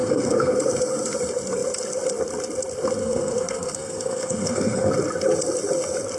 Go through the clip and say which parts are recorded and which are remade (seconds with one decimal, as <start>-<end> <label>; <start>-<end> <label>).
0.0-0.6 remade; 0.6-3.0 recorded; 3.0-4.9 remade; 4.9-6.2 recorded